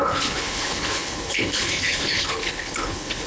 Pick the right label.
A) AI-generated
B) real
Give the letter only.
A